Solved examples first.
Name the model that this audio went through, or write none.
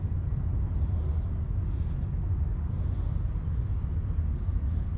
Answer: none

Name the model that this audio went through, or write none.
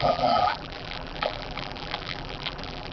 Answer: vocoder, BigVGAN v2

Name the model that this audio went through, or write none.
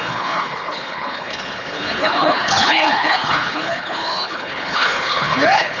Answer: codec, HILCodec